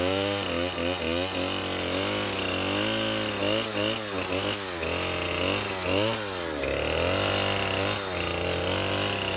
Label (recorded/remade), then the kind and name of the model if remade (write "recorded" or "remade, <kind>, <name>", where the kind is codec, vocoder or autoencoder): recorded